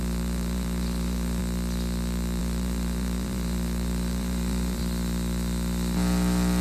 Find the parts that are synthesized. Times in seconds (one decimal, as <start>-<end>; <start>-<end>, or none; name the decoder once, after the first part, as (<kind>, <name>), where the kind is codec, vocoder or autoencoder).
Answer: 0.0-1.4 (vocoder, BigVGAN v2); 2.4-4.8